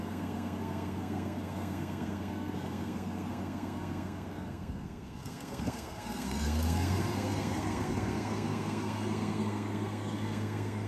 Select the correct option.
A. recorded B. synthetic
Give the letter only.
B